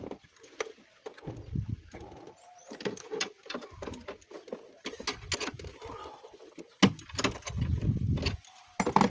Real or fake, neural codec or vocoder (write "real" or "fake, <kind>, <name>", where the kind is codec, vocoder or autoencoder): real